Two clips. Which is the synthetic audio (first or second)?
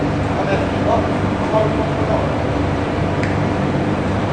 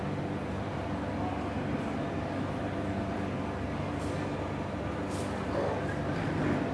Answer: first